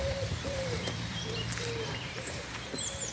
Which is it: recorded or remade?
remade